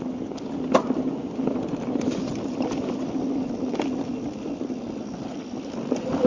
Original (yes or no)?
yes